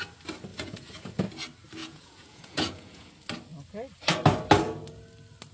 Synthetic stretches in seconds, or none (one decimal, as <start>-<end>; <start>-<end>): 0.5-1.1; 1.8-3.1